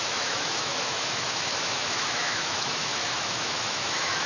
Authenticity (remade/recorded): remade